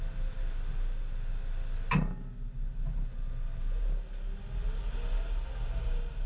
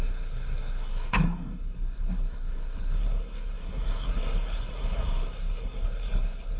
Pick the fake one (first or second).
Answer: second